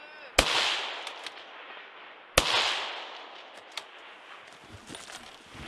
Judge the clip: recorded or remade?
recorded